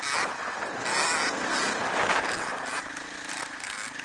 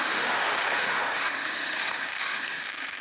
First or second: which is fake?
second